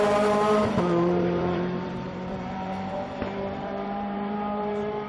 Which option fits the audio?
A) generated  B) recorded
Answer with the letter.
A